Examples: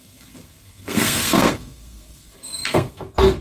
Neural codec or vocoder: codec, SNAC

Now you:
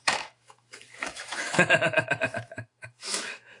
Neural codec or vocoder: autoencoder, DAC-VAE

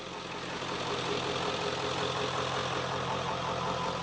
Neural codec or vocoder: none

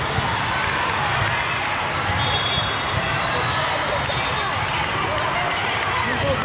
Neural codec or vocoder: none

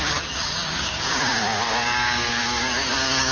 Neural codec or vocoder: codec, DAC